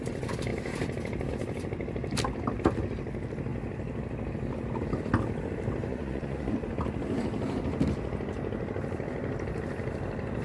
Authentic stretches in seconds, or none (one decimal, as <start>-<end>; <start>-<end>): 0.0-5.9; 6.7-10.4